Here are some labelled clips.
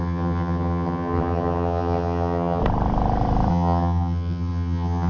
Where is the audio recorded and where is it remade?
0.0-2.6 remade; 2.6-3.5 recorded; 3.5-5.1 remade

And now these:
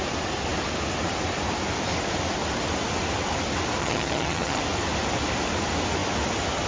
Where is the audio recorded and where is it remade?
0.0-3.8 recorded; 3.8-4.6 remade; 4.6-6.7 recorded

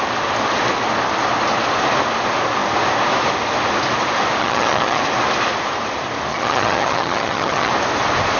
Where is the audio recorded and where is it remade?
0.0-4.4 recorded; 4.4-5.0 remade; 5.0-6.3 recorded; 6.3-7.7 remade; 7.7-8.4 recorded

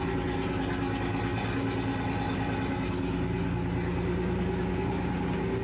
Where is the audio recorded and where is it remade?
0.0-5.6 recorded

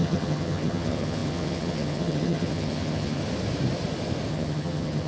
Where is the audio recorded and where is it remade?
0.0-3.2 remade; 3.2-4.3 recorded; 4.3-5.1 remade